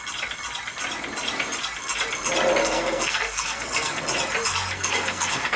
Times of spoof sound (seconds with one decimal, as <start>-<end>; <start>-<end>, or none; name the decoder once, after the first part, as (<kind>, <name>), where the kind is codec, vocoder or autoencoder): 2.6-4.0 (codec, SNAC); 4.5-5.6